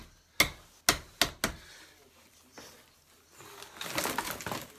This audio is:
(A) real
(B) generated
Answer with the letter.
A